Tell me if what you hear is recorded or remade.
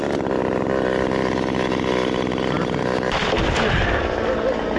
recorded